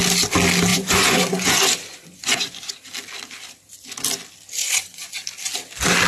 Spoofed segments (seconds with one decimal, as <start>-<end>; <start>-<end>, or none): 0.7-2.7; 4.6-5.1

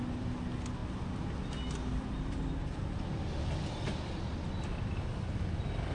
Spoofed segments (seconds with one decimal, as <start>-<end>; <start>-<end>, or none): none

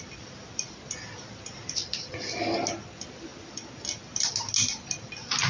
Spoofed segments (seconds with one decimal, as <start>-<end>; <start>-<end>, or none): none